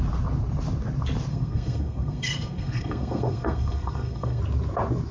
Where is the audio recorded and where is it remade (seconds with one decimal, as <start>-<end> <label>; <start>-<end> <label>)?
0.0-1.3 recorded; 1.3-4.4 remade; 4.4-5.1 recorded